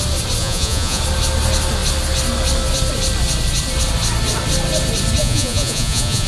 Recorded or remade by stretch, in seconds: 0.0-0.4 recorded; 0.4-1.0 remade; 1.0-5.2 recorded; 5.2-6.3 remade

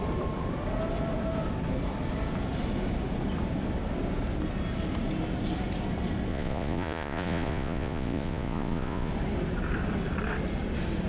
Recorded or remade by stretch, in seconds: 0.0-6.3 recorded; 6.3-9.1 remade; 9.1-11.1 recorded

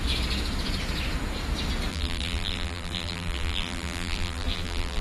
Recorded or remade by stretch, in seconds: 0.0-1.9 recorded; 1.9-5.0 remade

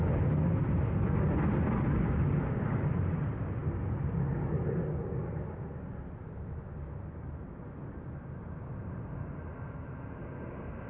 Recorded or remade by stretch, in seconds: 0.0-10.9 recorded

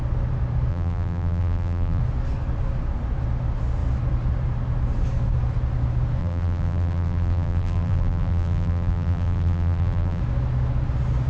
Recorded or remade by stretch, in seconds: 0.0-0.7 recorded; 0.7-2.0 remade; 2.0-6.2 recorded; 6.2-10.2 remade; 10.2-11.3 recorded

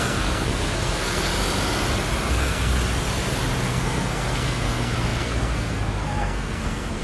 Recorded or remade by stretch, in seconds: 0.0-1.3 remade; 1.3-2.3 recorded; 2.3-2.7 remade; 2.7-3.6 recorded; 3.6-7.0 remade